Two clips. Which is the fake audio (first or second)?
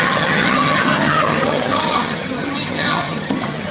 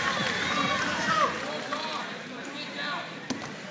first